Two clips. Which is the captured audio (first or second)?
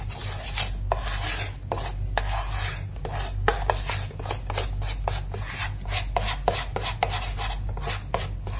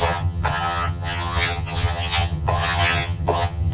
first